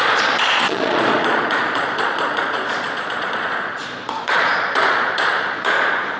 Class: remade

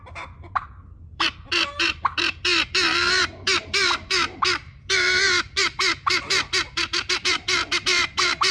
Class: remade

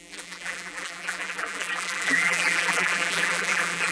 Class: remade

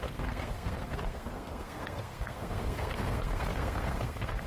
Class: remade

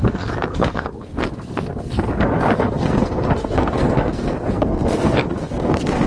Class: remade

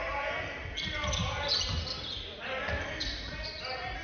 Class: recorded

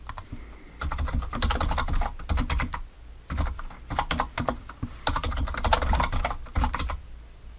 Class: recorded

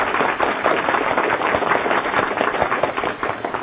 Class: recorded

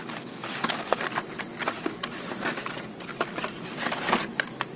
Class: recorded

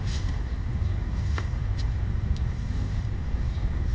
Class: remade